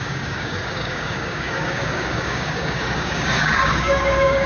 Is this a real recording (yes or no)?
no